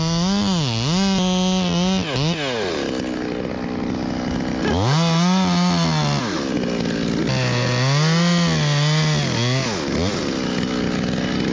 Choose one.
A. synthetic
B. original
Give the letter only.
B